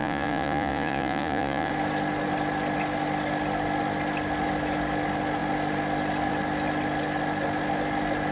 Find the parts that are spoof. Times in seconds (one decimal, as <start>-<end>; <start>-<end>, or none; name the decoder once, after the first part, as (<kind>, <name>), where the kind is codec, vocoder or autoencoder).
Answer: 0.0-1.7 (vocoder, Vocos)